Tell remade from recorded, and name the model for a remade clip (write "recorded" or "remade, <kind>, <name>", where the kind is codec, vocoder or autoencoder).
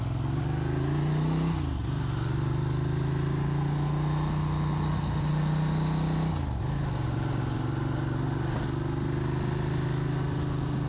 recorded